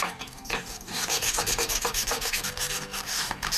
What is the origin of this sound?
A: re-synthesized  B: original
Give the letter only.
A